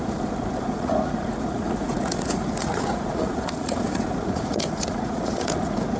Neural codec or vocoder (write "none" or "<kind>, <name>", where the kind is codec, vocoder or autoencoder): vocoder, Vocos